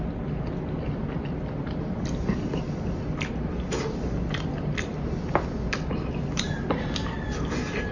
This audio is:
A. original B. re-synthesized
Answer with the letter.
A